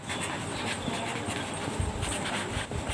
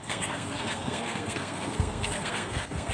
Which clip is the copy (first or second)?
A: second